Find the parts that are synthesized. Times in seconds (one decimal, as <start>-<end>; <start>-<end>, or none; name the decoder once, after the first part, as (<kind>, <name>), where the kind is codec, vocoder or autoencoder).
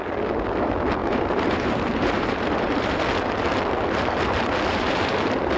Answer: 1.0-3.0 (vocoder, BigVGAN v2); 4.7-5.6